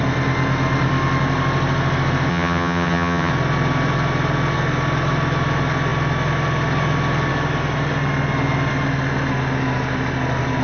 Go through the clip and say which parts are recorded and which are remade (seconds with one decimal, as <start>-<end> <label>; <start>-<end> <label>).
0.0-2.3 recorded; 2.3-3.3 remade; 3.3-10.6 recorded